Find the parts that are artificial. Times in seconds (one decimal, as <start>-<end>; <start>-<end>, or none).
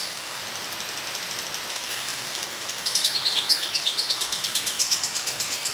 0.0-0.4; 1.7-5.7